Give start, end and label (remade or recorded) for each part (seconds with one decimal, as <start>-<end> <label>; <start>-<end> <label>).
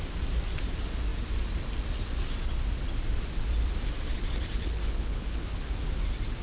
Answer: 0.0-4.6 recorded; 4.6-5.7 remade; 5.7-6.4 recorded